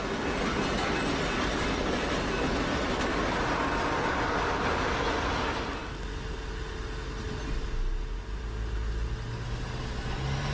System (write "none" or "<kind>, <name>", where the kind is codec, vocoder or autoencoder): none